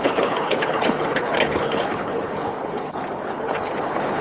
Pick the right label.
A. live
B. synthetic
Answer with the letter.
B